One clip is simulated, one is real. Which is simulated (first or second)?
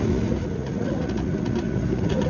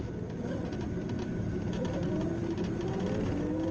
first